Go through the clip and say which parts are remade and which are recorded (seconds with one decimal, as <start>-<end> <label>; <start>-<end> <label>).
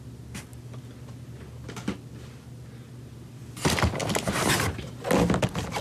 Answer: 0.0-5.8 recorded